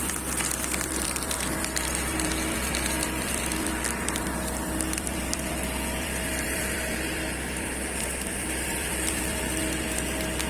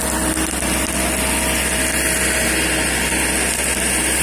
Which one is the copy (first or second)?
first